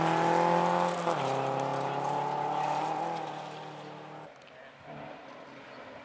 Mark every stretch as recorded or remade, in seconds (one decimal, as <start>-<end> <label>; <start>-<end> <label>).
0.0-6.0 recorded